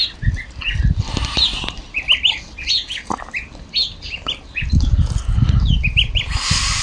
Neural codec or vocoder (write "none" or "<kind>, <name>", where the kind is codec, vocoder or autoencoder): none